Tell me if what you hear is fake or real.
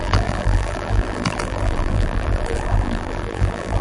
fake